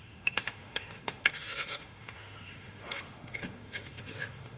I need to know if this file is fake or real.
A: fake